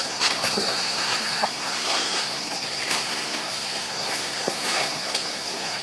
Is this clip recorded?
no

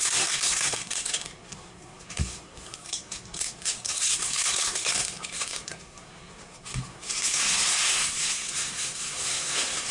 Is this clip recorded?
no